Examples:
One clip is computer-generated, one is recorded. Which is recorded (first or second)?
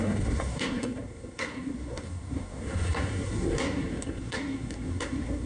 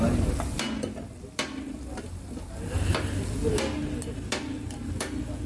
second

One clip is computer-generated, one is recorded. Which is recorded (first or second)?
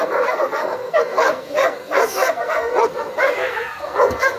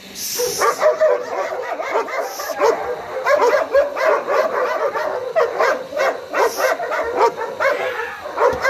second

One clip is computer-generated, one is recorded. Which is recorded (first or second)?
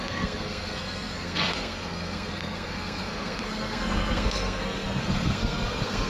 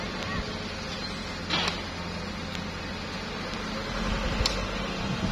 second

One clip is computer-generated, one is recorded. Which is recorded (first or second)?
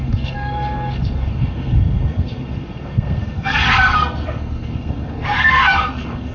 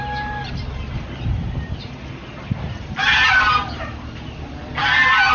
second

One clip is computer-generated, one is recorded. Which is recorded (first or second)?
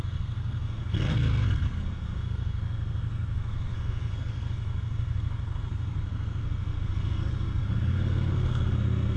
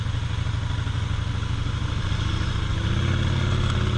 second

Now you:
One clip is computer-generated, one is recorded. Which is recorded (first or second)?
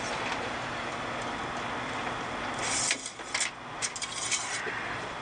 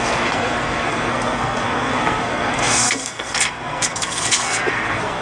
first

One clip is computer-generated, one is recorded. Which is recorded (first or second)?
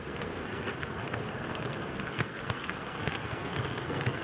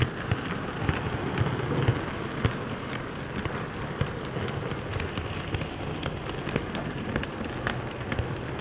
second